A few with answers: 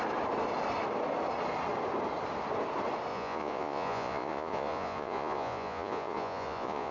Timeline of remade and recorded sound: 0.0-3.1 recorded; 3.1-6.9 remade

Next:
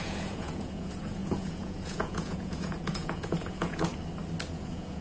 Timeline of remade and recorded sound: 0.0-3.9 remade; 3.9-4.5 recorded; 4.5-5.0 remade